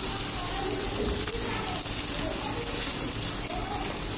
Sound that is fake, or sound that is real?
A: real